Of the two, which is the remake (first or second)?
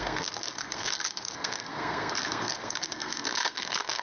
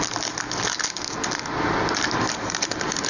first